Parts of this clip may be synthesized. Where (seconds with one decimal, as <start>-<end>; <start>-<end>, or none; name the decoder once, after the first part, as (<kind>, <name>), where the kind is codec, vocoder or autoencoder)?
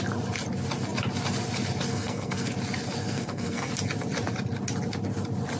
1.9-2.5 (codec, SNAC); 3.0-3.7